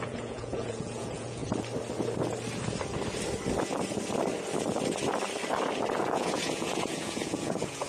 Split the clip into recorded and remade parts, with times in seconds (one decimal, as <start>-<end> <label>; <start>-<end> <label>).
0.0-1.4 remade; 1.4-6.1 recorded; 6.1-7.9 remade